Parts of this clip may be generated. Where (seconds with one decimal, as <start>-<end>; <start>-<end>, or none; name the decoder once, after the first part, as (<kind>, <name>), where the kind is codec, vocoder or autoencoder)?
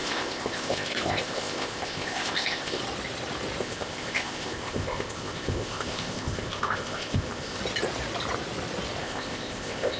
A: 0.0-2.8 (codec, ZipCodec); 3.6-7.6; 9.0-10.0